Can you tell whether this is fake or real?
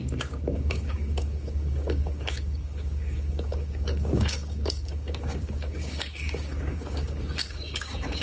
fake